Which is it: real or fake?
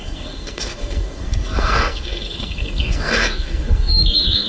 fake